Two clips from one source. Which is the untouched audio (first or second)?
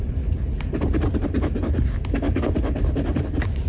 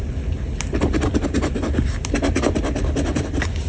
second